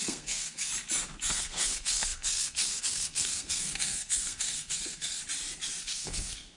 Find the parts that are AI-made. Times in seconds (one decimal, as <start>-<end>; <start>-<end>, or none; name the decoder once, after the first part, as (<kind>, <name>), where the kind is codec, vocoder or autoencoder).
0.0-0.7 (codec, SNAC); 1.3-5.2; 5.8-6.6